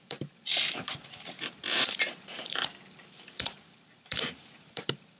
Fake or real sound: fake